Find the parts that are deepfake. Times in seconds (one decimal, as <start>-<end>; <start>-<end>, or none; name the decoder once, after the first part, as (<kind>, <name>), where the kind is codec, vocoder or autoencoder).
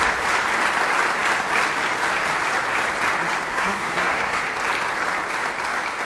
3.5-4.4 (codec, SNAC)